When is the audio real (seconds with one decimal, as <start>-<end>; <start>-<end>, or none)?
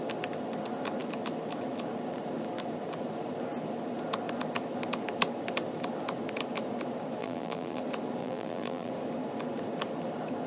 0.0-7.2; 7.8-8.2; 8.9-10.5